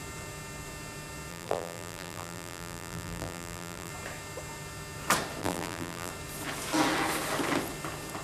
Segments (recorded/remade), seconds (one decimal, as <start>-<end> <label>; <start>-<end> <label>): 0.0-1.3 recorded; 1.3-3.9 remade; 3.9-5.4 recorded; 5.4-6.1 remade; 6.1-8.2 recorded